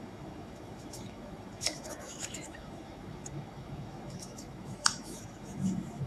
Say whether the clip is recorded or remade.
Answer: remade